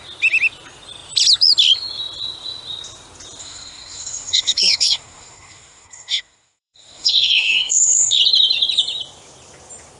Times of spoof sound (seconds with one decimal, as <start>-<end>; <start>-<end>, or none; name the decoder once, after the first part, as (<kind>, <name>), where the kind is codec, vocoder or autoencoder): 3.4-8.2 (codec, SNAC)